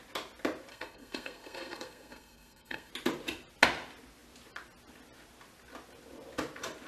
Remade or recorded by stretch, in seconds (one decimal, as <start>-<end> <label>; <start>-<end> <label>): 0.0-0.7 recorded; 0.7-2.9 remade; 2.9-6.9 recorded